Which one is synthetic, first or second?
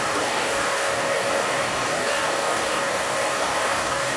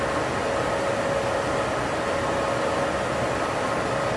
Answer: first